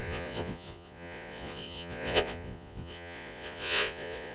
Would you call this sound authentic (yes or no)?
no